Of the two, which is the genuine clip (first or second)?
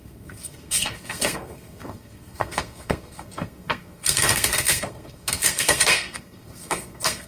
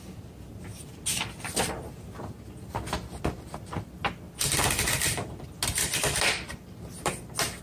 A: second